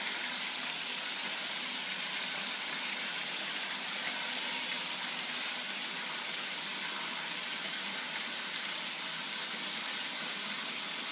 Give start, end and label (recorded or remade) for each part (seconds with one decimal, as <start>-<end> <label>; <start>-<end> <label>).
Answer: 0.0-11.1 recorded